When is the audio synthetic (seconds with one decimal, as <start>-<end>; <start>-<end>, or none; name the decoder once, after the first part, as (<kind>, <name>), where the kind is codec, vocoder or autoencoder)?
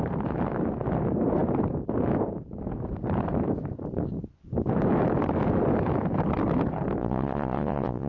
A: 7.0-8.1 (vocoder, Vocos)